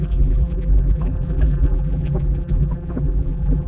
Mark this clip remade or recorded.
remade